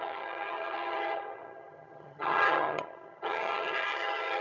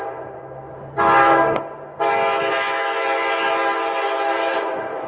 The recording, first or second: second